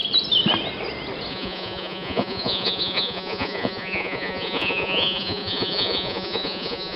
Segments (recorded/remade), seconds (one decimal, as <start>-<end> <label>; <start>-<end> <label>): 0.0-1.3 recorded; 1.3-7.0 remade